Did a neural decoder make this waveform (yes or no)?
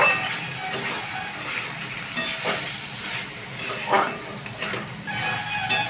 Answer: no